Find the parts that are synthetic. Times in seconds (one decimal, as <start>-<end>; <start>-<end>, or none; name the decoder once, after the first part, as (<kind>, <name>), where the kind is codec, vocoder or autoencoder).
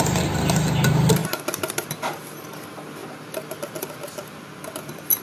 none